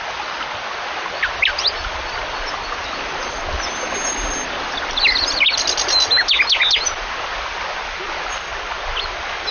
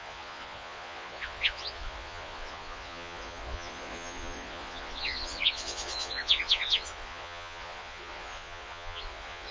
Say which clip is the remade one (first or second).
second